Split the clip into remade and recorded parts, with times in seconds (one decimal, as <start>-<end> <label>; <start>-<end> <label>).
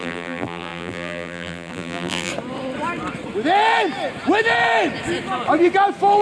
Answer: 0.0-2.3 remade; 2.3-6.2 recorded